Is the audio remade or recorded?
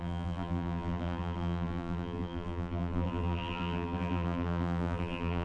remade